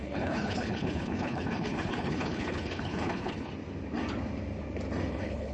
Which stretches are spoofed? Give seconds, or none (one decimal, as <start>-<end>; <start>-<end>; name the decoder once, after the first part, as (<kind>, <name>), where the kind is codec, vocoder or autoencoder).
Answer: 0.0-3.5 (codec, HILCodec); 5.1-5.5